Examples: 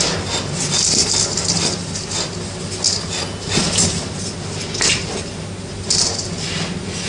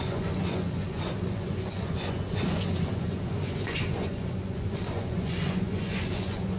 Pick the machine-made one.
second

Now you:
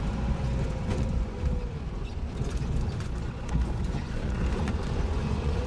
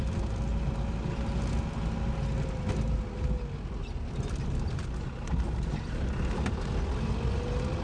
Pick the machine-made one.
first